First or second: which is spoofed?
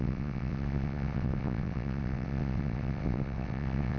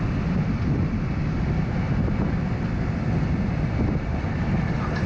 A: first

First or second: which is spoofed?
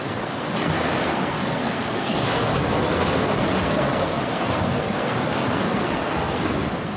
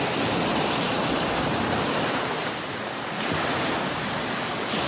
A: first